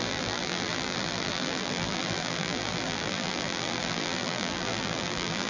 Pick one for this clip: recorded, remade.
remade